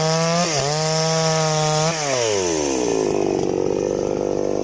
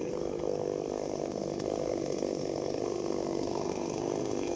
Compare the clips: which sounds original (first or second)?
first